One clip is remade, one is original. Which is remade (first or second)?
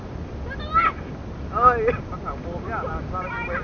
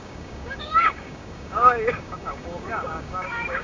second